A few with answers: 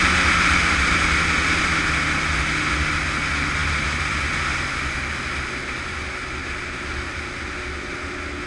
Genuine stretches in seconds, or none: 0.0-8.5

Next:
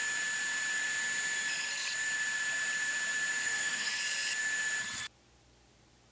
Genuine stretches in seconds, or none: 0.0-3.4; 4.0-6.1